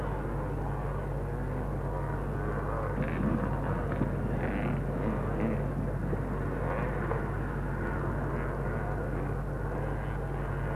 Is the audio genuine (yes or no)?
yes